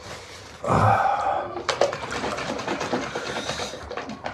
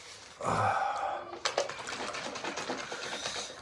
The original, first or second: second